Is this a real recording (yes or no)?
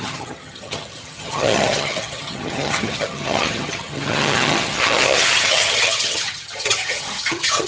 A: no